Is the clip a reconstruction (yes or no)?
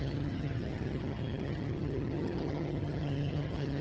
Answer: yes